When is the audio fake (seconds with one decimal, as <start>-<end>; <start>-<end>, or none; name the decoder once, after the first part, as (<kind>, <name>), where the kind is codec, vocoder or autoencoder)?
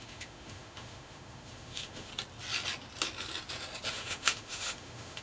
0.0-2.1 (autoencoder, DAC-VAE); 3.9-5.2